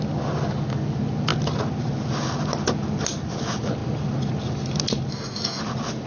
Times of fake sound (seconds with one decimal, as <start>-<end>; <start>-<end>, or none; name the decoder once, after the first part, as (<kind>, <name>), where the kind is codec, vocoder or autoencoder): 5.1-5.6 (codec, DAC)